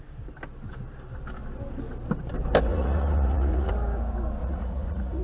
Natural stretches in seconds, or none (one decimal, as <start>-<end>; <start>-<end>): 0.0-2.7; 3.7-4.4